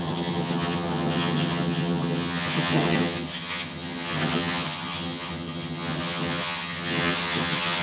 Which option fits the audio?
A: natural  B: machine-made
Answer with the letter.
B